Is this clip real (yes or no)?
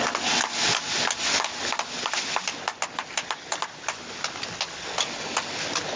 yes